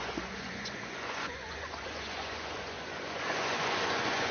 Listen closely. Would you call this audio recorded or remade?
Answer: remade